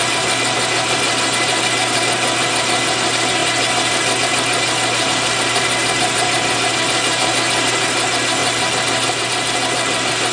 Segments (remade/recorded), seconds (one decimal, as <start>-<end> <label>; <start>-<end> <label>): 0.0-10.3 recorded